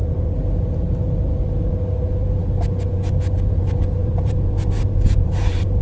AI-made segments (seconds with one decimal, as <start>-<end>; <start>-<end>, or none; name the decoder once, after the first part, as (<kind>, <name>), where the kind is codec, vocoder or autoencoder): 3.5-5.8 (vocoder, BigVGAN v2)